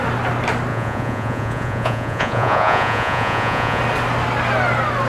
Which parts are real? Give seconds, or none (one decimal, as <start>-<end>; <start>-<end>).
0.0-0.7; 3.8-5.1